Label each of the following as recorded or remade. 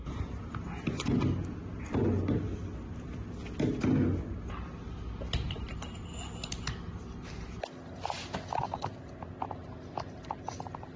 recorded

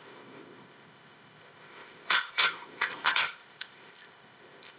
remade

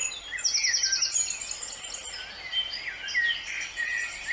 recorded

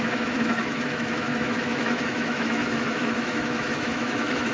remade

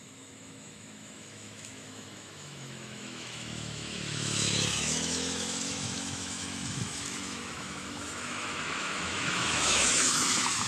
remade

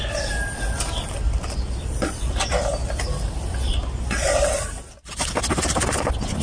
recorded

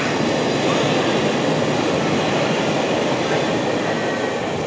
recorded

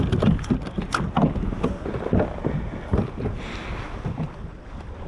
recorded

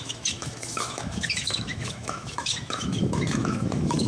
remade